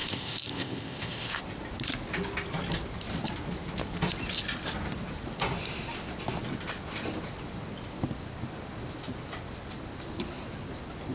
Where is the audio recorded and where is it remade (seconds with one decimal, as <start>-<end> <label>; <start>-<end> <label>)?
0.0-1.4 remade; 1.4-11.1 recorded